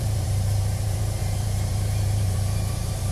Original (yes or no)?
no